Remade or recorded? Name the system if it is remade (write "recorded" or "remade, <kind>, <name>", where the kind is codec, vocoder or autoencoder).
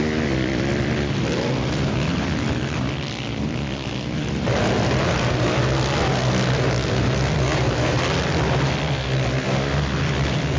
recorded